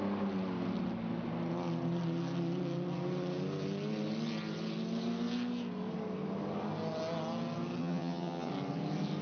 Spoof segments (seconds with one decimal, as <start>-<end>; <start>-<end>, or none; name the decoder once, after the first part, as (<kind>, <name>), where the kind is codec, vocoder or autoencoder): 7.8-8.5 (vocoder, HiFi-GAN)